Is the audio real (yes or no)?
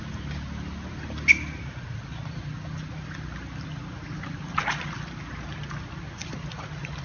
yes